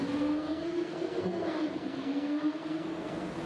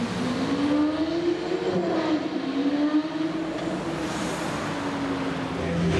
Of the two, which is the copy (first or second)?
first